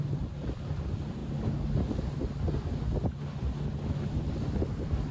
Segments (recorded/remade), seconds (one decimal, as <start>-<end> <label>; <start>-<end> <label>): 0.0-1.2 remade; 1.2-4.3 recorded; 4.3-5.1 remade